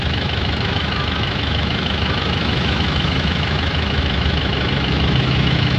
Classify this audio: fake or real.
fake